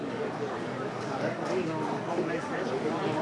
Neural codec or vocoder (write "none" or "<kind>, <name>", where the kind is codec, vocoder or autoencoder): codec, DAC